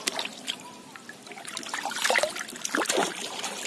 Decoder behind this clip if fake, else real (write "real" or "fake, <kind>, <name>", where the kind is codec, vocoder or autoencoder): real